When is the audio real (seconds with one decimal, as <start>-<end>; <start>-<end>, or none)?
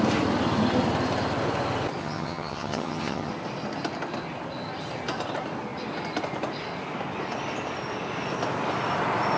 0.0-2.0; 3.3-9.4